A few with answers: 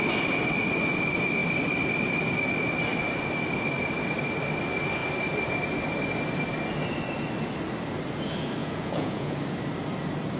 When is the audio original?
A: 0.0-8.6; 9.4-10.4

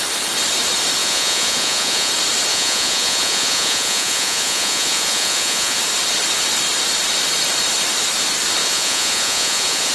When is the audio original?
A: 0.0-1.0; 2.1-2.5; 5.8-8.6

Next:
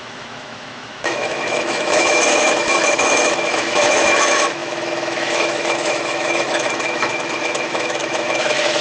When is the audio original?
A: none

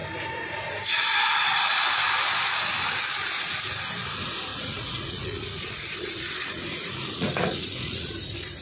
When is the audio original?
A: 0.0-4.5; 8.1-8.6

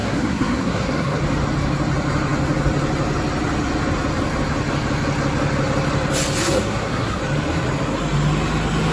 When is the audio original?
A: 1.2-6.4; 7.2-8.9

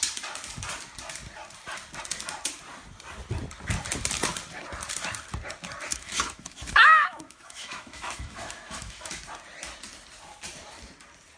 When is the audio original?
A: 0.0-5.9; 9.2-11.4

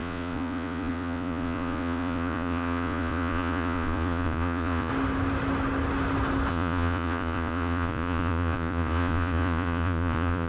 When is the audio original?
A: 4.9-6.5

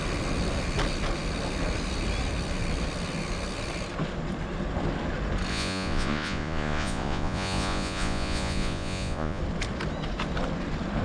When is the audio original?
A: 0.0-5.5; 9.4-11.0